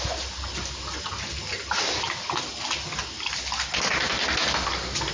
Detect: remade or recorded recorded